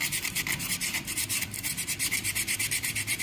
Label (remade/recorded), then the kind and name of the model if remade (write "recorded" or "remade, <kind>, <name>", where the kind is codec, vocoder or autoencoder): remade, vocoder, BigVGAN v2